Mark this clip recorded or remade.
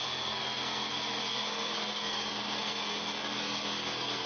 remade